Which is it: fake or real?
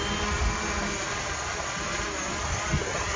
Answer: real